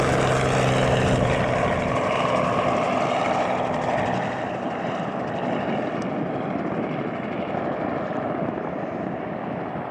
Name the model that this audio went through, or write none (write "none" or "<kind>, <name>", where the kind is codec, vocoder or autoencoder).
none